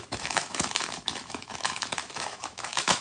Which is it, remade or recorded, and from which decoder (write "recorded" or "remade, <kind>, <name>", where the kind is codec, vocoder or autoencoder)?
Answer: remade, autoencoder, DAC-VAE